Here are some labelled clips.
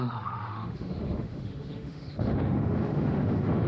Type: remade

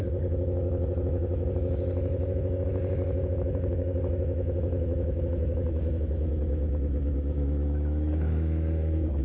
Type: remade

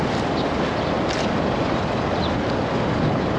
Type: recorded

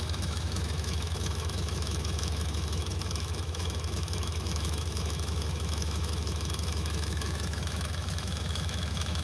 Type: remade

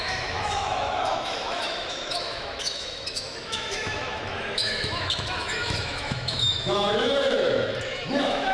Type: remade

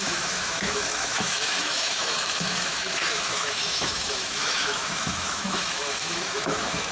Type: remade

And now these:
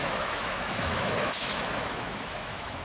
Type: remade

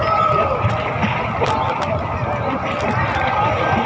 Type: recorded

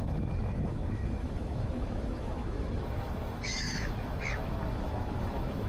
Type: remade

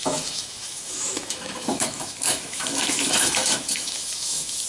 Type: remade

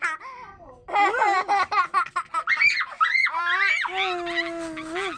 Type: recorded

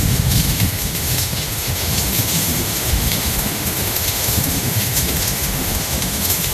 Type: remade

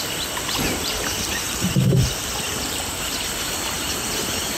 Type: recorded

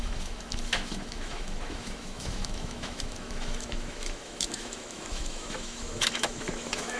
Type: remade